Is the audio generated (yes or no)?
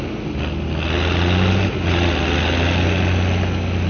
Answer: no